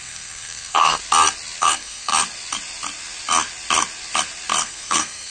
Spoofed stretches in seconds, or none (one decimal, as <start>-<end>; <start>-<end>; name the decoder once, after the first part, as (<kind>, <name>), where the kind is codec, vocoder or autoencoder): 0.0-1.0 (codec, SNAC); 1.6-2.1; 4.6-5.3